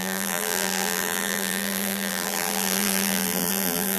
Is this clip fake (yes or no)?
yes